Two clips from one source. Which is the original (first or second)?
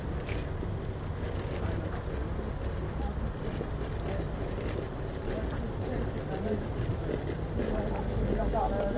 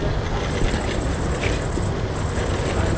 first